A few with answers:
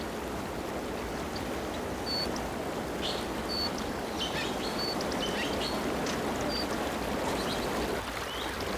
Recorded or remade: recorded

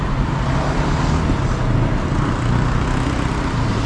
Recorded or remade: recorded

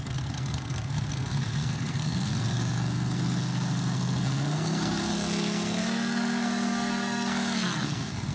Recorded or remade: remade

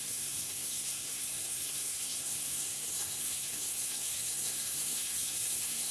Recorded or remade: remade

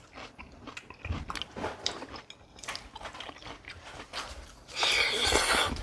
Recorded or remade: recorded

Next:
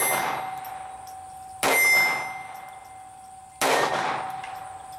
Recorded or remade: recorded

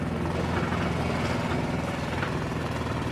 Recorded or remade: recorded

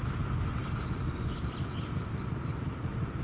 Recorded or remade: recorded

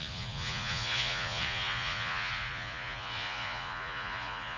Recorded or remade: remade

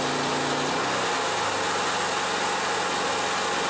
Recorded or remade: recorded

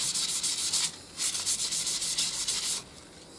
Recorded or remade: recorded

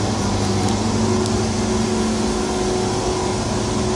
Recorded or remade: recorded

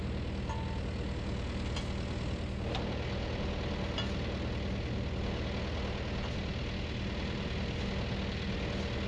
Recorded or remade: recorded